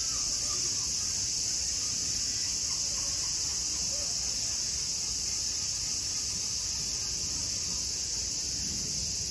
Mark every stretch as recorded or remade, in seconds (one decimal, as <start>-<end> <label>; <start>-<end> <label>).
0.0-9.3 recorded